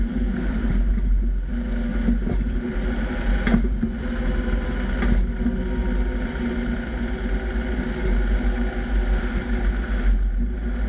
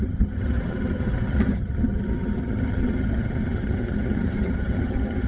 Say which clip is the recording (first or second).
first